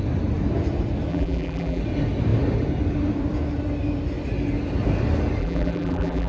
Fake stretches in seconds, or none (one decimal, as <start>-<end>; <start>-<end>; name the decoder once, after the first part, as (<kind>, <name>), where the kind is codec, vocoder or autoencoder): 1.1-1.8 (vocoder, BigVGAN v2); 5.4-6.3